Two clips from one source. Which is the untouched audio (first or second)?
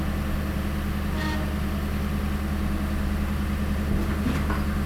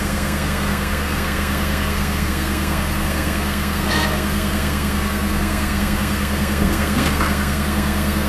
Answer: first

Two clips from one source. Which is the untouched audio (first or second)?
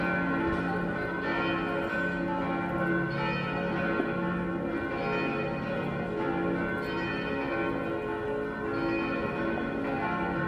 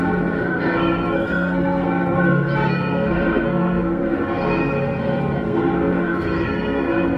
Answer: first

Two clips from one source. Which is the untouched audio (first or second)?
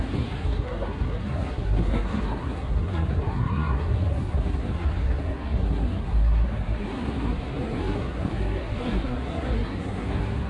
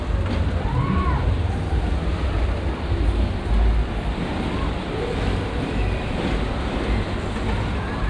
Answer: second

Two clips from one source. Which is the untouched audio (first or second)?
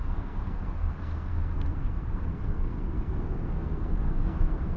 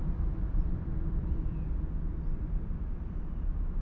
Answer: second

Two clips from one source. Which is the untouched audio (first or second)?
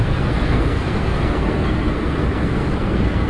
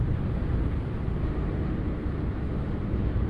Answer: second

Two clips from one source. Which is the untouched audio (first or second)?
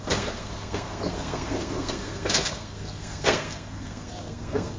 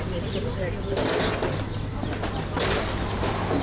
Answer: second